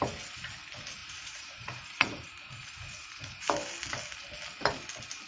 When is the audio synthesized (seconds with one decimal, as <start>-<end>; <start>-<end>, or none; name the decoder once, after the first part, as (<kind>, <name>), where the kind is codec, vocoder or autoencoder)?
1.0-3.4 (vocoder, Vocos)